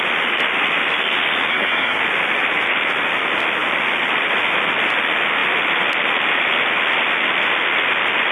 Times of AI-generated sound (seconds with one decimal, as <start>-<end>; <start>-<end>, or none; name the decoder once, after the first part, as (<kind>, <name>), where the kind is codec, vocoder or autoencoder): 1.5-2.0 (codec, SNAC)